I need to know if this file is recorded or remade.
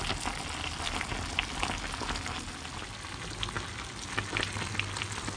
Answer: recorded